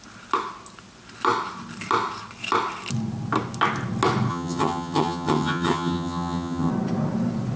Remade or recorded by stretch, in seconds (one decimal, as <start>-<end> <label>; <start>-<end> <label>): 0.0-4.3 recorded; 4.3-6.7 remade; 6.7-7.6 recorded